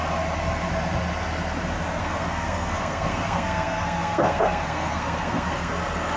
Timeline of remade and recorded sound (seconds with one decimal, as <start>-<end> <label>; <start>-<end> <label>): 0.0-2.0 recorded; 2.0-5.7 remade; 5.7-6.2 recorded